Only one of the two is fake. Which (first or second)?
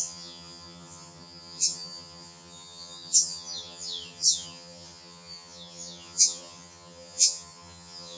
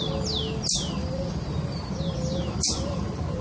first